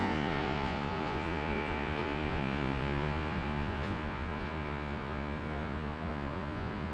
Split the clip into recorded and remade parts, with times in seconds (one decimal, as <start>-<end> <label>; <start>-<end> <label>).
0.0-6.9 remade